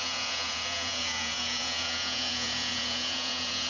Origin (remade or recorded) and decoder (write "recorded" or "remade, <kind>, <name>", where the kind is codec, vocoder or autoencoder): remade, vocoder, Vocos